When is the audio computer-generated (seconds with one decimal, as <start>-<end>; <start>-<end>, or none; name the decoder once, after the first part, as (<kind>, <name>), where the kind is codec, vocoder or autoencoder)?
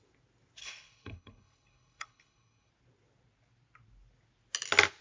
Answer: 0.6-2.7 (codec, HILCodec)